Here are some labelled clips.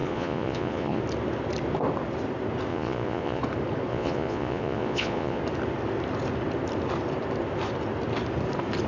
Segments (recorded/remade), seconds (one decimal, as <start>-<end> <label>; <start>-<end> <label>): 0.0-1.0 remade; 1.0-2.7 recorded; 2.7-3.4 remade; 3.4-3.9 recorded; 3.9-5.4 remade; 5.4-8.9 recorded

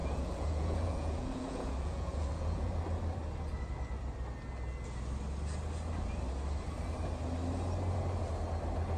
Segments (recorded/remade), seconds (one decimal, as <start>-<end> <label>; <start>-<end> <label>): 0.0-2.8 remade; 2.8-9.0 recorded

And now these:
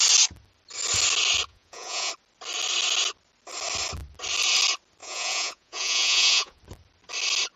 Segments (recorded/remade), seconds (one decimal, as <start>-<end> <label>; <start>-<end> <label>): 0.0-1.5 recorded; 1.5-2.1 remade; 2.1-5.0 recorded; 5.0-6.6 remade; 6.6-7.6 recorded

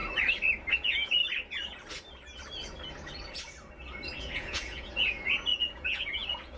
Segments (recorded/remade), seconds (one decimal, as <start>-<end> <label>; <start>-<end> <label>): 0.0-0.7 recorded; 0.7-1.2 remade; 1.2-4.2 recorded; 4.2-6.6 remade

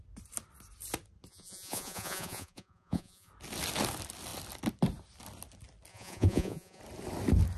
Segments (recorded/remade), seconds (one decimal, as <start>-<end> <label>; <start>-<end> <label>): 0.0-1.3 recorded; 1.3-3.3 remade; 3.3-5.9 recorded; 5.9-6.8 remade; 6.8-7.6 recorded

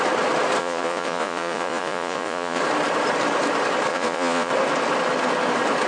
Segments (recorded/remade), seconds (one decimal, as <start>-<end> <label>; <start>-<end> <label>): 0.0-0.6 recorded; 0.6-2.6 remade; 2.6-3.9 recorded; 3.9-4.5 remade; 4.5-5.9 recorded

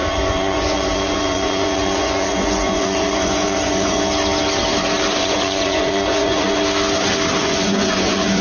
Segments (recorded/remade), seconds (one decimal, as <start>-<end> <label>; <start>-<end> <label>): 0.0-4.0 remade; 4.0-5.2 recorded; 5.2-6.6 remade; 6.6-7.4 recorded; 7.4-8.4 remade

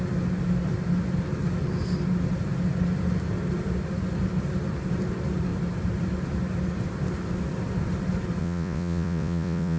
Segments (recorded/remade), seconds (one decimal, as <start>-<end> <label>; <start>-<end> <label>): 0.0-8.4 recorded; 8.4-9.8 remade